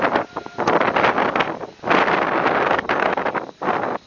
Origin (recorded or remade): recorded